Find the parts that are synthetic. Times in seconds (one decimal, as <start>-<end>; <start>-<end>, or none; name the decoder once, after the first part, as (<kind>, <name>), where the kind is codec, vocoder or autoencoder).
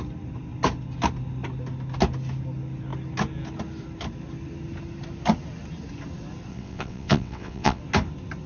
6.5-7.8 (vocoder, WaveNeXt)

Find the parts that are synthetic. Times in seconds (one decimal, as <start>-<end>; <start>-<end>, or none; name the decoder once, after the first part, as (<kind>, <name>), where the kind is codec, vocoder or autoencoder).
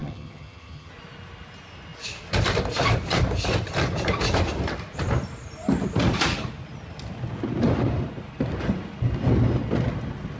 0.0-0.9 (vocoder, HiFi-GAN)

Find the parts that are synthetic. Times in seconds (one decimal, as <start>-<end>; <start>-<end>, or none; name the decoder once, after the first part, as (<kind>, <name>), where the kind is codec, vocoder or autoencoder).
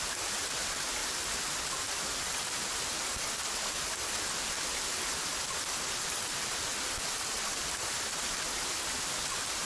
none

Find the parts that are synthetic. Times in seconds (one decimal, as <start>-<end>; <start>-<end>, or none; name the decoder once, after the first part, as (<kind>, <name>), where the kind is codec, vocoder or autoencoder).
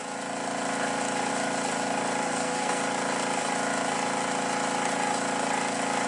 2.2-2.8 (codec, SNAC)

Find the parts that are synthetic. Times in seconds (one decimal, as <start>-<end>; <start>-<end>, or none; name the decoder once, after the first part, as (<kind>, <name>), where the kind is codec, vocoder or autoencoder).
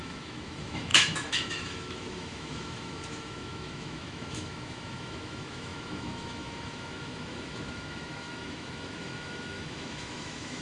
0.0-10.6 (autoencoder, DAC-VAE)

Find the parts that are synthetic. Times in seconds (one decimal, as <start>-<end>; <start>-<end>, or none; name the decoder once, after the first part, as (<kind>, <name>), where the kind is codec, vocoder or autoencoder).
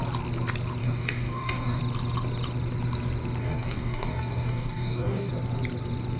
0.8-1.8 (codec, DAC); 3.4-5.3